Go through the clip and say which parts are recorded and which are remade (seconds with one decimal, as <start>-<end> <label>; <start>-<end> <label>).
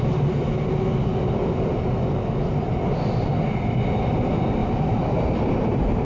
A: 0.0-4.6 recorded; 4.6-6.0 remade